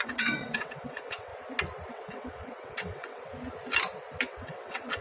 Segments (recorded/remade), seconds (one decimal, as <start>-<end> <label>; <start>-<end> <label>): 0.0-1.3 remade; 1.3-1.9 recorded; 1.9-3.3 remade; 3.3-4.3 recorded; 4.3-5.0 remade